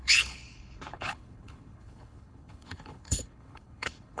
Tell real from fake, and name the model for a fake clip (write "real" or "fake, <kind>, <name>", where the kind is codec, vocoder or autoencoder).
fake, codec, HILCodec